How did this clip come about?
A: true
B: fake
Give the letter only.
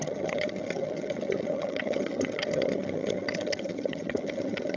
B